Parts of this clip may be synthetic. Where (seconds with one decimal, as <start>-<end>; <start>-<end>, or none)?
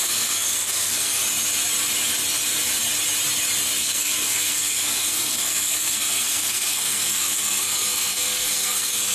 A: 0.0-1.2; 3.8-9.1